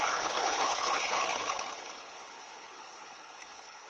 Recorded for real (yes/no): no